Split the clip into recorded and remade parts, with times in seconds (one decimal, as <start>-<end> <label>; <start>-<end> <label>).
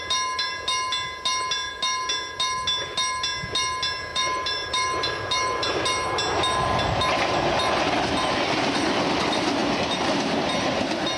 0.0-4.1 recorded; 4.1-5.7 remade; 5.7-11.2 recorded